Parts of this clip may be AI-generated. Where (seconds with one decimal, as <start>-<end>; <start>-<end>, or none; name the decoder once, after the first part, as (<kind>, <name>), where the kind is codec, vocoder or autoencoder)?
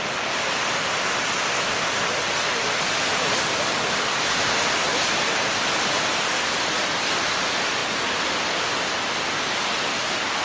none